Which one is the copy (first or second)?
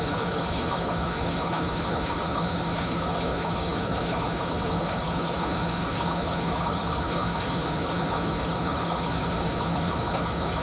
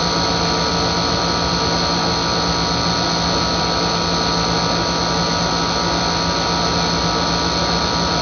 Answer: first